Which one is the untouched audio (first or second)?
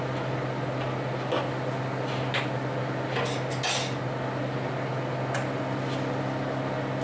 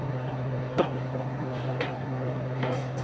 first